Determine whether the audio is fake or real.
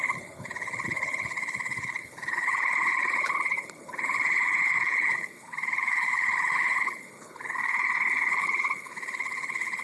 fake